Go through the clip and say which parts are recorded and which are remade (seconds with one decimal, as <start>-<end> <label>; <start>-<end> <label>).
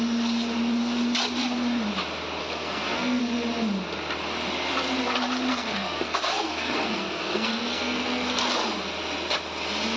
0.0-2.4 recorded; 2.4-3.2 remade; 3.2-5.5 recorded; 5.5-8.4 remade; 8.4-10.0 recorded